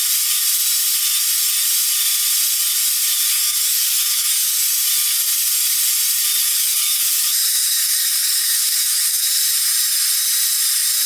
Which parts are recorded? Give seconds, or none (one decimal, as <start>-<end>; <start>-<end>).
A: 0.0-3.3; 4.6-6.4; 9.4-11.1